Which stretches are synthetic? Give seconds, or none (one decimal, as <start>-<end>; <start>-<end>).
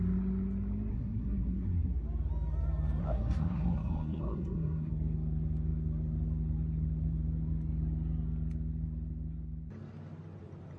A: 0.9-2.0; 3.0-4.9